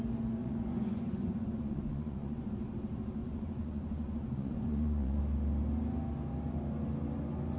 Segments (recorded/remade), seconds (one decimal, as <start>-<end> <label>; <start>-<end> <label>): 0.0-0.4 recorded; 0.4-2.5 remade; 2.5-3.2 recorded; 3.2-5.2 remade; 5.2-7.6 recorded